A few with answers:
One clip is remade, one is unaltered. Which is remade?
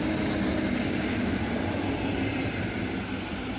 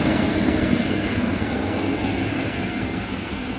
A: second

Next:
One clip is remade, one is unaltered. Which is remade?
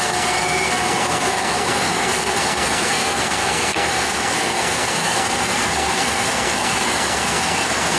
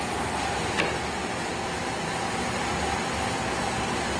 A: first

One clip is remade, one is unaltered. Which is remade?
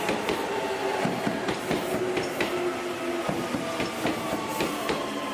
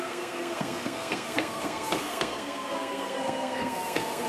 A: second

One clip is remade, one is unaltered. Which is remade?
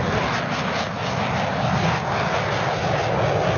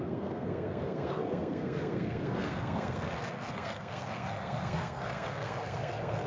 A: second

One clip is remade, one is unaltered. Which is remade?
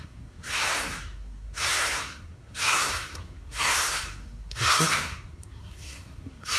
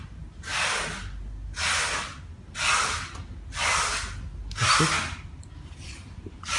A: first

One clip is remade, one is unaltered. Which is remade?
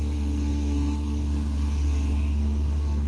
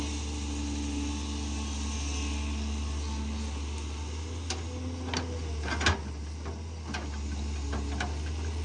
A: first